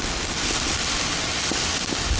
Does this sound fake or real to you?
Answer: real